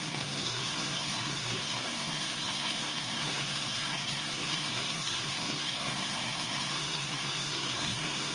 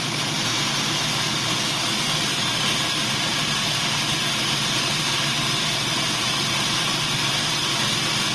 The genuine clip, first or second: second